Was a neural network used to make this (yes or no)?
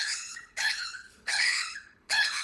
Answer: yes